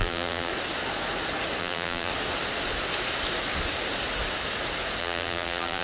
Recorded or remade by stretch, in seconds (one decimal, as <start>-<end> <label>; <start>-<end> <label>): 0.0-0.5 remade; 0.5-1.6 recorded; 1.6-2.1 remade; 2.1-5.0 recorded; 5.0-5.8 remade